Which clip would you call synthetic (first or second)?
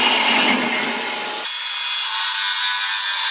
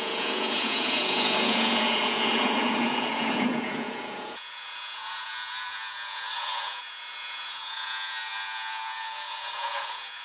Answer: second